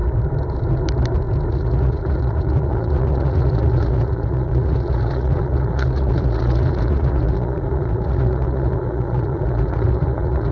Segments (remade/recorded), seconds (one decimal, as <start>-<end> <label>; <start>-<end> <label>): 0.0-1.5 recorded; 1.5-10.5 remade